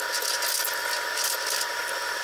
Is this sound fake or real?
real